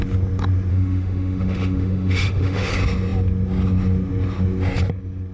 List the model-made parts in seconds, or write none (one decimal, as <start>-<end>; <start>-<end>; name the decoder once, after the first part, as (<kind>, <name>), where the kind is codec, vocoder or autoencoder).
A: 0.7-2.7 (autoencoder, DAC-VAE)